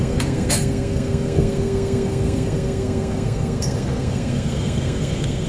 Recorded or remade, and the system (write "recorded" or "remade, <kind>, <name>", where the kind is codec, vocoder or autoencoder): remade, codec, SNAC